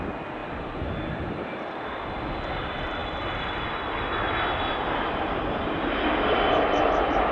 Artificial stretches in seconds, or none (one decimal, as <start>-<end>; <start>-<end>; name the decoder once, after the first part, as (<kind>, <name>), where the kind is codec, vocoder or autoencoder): none